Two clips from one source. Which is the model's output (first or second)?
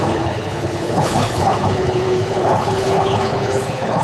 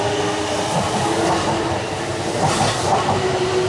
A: first